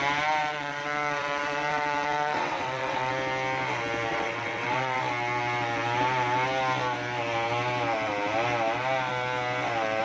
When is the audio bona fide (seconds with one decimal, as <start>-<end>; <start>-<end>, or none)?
0.0-0.4; 3.1-4.1; 5.0-10.0